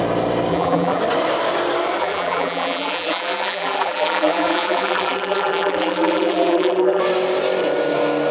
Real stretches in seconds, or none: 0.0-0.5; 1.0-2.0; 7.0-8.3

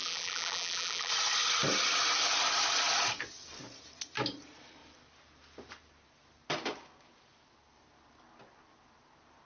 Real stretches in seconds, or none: 1.1-9.4

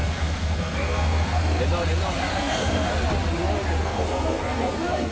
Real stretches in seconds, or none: 1.6-2.3; 2.9-3.8

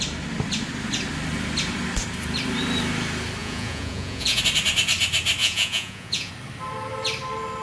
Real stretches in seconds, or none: 0.0-3.4; 4.4-5.4; 6.3-7.6